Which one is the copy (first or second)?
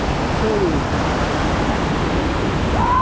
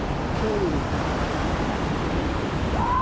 second